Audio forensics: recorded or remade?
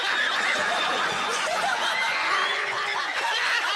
remade